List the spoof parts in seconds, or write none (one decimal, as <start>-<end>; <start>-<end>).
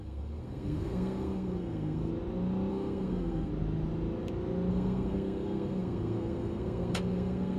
0.0-2.1; 2.7-3.5; 4.7-7.6